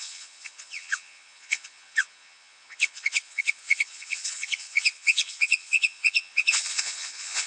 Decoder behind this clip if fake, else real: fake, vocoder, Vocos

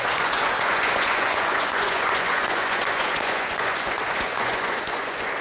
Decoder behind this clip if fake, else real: fake, vocoder, Vocos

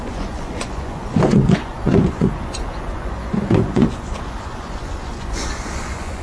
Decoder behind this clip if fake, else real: fake, vocoder, Vocos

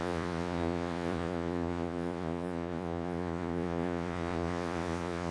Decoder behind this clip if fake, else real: fake, vocoder, Vocos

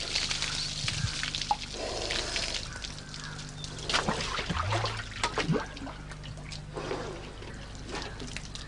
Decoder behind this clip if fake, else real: real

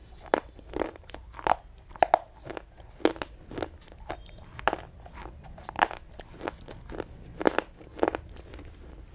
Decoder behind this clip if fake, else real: real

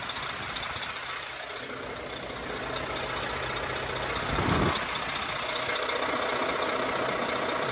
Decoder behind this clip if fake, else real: real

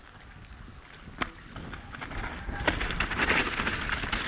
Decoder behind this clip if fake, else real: real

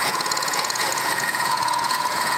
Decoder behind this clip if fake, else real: fake, vocoder, Vocos